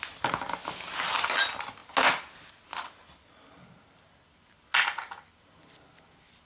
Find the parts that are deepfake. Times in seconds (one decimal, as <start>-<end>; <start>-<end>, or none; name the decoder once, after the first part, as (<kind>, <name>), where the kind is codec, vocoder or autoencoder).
none